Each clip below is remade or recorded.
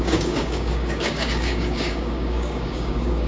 remade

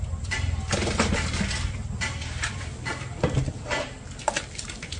recorded